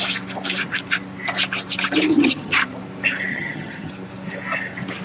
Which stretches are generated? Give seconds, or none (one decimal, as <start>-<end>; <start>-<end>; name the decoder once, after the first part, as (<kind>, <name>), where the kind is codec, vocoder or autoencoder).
2.1-2.6 (vocoder, HiFi-GAN); 3.3-3.9